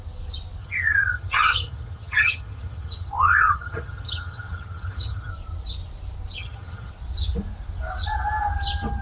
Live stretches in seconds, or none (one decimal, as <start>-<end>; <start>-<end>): 0.0-0.6; 5.3-6.4; 6.9-9.0